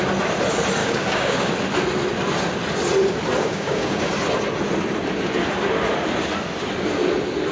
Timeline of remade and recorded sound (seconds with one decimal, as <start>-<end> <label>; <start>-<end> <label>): 0.0-0.8 recorded; 0.8-1.5 remade; 1.5-3.4 recorded; 3.4-4.1 remade; 4.1-7.5 recorded